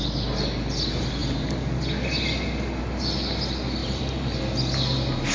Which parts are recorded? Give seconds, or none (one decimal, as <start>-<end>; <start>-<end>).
0.0-3.8; 4.4-5.3